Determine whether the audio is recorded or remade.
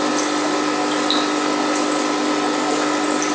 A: recorded